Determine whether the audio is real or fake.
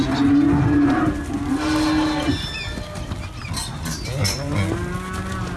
real